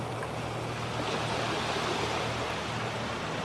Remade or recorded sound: recorded